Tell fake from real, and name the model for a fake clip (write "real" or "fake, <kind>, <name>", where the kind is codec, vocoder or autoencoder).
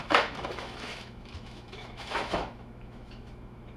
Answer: fake, autoencoder, DAC-VAE